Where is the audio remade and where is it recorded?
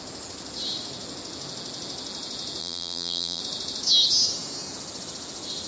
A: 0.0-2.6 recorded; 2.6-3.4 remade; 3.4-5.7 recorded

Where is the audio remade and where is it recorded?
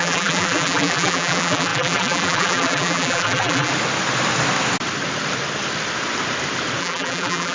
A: 0.0-3.7 remade; 3.7-6.8 recorded; 6.8-7.5 remade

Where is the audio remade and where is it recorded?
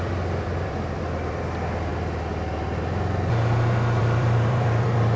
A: 0.0-1.9 remade; 1.9-4.0 recorded; 4.0-5.2 remade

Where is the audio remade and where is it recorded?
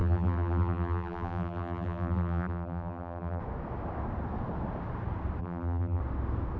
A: 0.0-3.4 remade; 3.4-5.4 recorded; 5.4-6.0 remade; 6.0-6.6 recorded